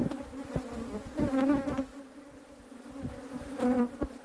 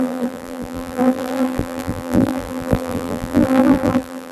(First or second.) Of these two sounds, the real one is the first